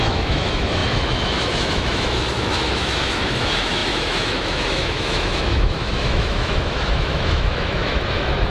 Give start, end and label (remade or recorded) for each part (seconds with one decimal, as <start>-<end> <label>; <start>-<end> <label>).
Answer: 0.0-8.5 remade